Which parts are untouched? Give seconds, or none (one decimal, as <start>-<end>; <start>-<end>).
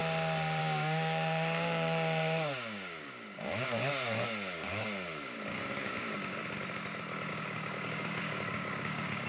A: 0.0-0.6; 6.4-7.3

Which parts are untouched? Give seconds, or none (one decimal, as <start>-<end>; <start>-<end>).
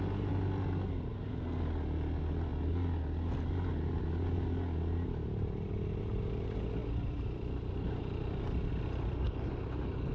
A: 0.0-10.1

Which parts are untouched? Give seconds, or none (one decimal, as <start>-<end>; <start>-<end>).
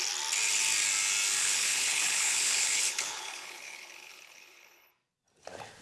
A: 0.0-1.4; 4.9-5.8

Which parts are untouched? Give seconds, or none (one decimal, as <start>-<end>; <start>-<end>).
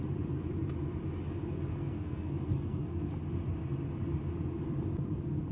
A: 0.0-1.7; 3.1-5.5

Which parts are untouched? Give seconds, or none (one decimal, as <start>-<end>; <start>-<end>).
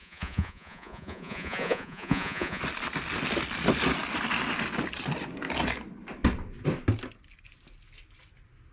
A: 2.6-8.7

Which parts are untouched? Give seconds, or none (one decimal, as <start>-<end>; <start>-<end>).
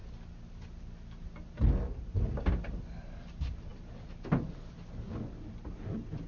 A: 0.0-6.3